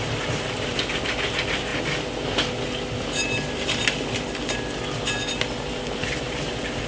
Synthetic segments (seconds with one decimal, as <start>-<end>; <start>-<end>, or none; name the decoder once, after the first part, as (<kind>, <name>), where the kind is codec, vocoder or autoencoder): 0.0-1.7 (vocoder, BigVGAN v2); 5.8-6.9

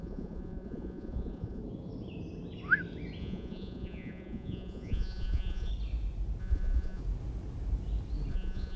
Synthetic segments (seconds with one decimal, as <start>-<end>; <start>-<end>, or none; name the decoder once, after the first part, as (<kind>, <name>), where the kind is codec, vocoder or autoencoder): 0.0-1.6 (vocoder, Vocos); 3.2-5.7; 6.4-7.0; 8.3-8.8

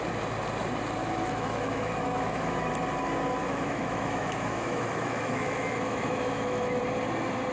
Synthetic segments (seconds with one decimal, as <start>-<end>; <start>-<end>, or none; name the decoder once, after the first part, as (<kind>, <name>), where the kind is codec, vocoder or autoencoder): 1.0-2.7 (autoencoder, DAC-VAE); 3.4-6.8

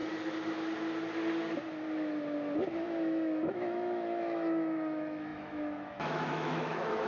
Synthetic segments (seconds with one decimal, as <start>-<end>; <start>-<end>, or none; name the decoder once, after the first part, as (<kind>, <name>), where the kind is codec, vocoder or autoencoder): 2.7-7.1 (autoencoder, DAC-VAE)

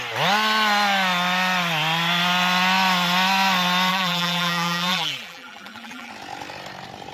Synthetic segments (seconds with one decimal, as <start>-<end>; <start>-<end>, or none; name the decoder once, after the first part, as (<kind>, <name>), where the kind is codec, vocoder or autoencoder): 3.9-6.1 (vocoder, BigVGAN v2)

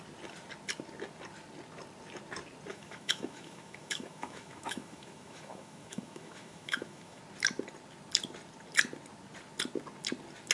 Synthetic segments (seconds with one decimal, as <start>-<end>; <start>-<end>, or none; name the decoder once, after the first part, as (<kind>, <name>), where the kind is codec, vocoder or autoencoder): 2.7-7.2 (autoencoder, DAC-VAE)

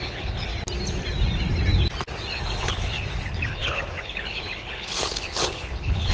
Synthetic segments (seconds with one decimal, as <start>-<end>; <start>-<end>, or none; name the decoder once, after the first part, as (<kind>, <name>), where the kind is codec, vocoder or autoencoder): 0.0-0.5 (codec, HILCodec); 2.3-6.1